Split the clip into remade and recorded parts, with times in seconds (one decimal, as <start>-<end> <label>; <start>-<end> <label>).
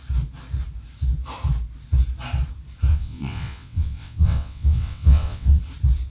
0.0-2.9 recorded; 2.9-5.6 remade; 5.6-6.1 recorded